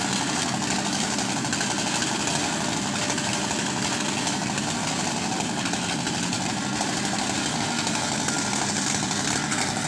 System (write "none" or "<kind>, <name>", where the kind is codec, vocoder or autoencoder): none